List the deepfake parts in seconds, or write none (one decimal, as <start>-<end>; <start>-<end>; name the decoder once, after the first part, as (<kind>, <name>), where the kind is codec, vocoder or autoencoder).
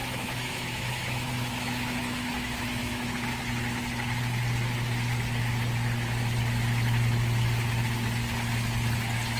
0.0-3.4 (autoencoder, DAC-VAE)